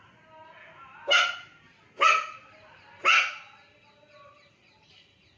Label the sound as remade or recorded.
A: recorded